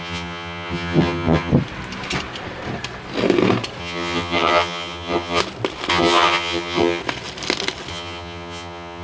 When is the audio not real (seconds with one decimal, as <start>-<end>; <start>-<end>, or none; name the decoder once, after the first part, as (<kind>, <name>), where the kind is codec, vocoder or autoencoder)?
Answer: 0.0-1.5 (vocoder, HiFi-GAN); 3.8-5.4; 5.9-7.0; 7.9-9.0